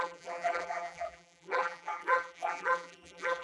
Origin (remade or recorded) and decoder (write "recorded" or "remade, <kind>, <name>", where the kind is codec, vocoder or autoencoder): remade, vocoder, BigVGAN v2